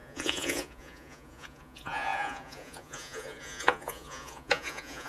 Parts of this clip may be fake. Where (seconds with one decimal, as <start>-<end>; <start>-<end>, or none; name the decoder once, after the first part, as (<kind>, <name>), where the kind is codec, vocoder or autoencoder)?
0.0-5.1 (vocoder, Vocos)